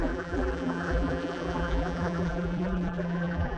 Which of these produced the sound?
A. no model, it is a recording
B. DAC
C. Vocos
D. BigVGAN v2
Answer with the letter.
D